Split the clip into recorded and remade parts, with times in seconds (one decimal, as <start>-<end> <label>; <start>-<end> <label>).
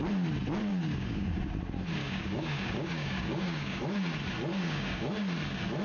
0.0-0.7 recorded; 0.7-1.4 remade; 1.4-2.0 recorded; 2.0-3.8 remade; 3.8-4.5 recorded; 4.5-5.1 remade; 5.1-5.8 recorded